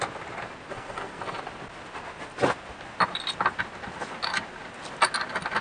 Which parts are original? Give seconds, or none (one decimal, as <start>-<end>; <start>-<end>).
0.0-0.7; 1.4-5.6